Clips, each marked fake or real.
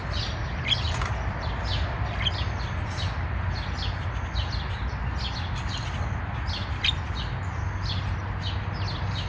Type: real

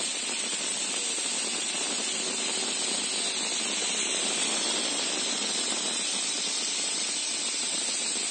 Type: real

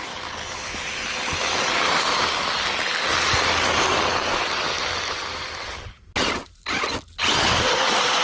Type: real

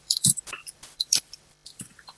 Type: fake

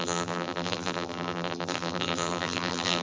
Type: fake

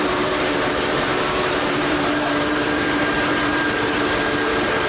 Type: fake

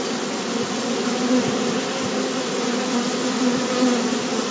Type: real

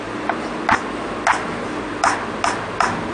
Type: real